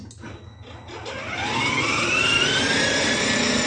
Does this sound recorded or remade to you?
recorded